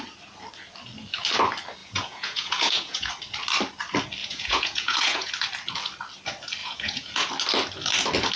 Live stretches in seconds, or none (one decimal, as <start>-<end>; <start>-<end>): 0.0-1.8; 3.1-4.2; 5.3-6.6; 7.3-8.4